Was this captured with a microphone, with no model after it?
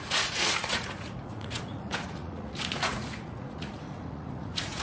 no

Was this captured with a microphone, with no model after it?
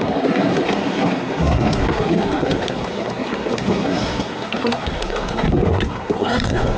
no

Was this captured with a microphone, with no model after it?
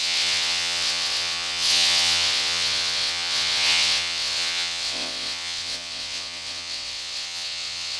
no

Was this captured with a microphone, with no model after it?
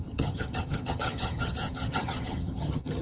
no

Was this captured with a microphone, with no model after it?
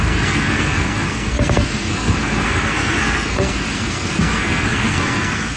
no